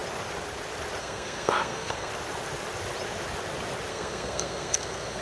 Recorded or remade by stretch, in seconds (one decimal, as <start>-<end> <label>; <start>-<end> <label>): 0.0-1.0 recorded; 1.0-2.1 remade; 2.1-3.9 recorded; 3.9-5.2 remade